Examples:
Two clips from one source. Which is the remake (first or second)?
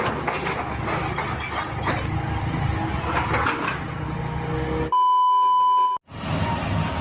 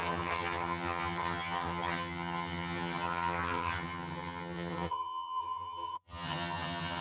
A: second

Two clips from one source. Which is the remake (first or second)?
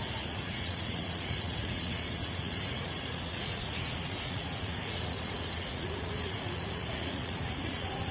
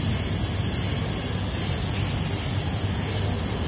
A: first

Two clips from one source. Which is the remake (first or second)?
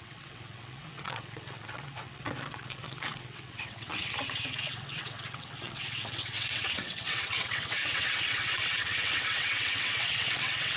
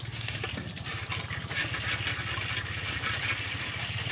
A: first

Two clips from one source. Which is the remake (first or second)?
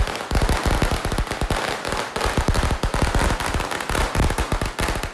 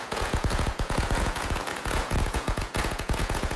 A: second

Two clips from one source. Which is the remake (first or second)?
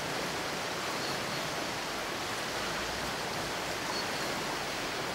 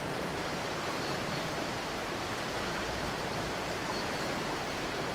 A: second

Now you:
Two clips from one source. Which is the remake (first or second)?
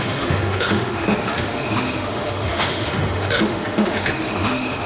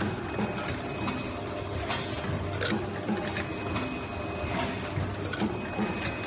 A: first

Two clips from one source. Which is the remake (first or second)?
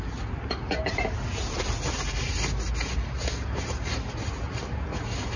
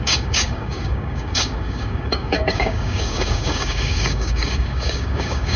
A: second